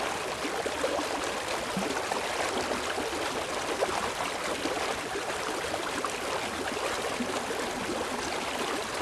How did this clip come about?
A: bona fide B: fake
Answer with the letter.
A